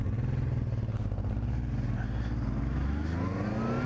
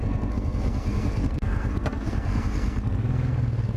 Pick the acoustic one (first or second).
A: first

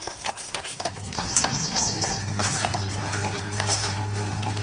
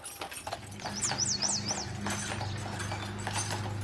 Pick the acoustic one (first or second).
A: second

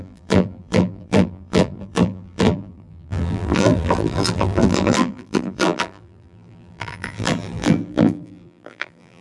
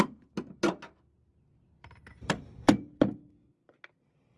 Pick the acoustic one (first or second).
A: second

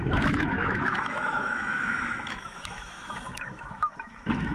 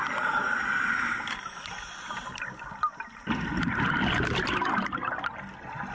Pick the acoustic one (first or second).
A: second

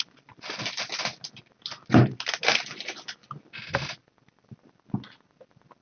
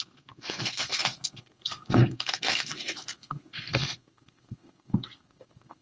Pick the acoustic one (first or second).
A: first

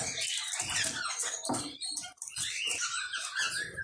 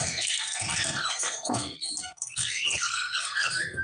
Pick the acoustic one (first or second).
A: first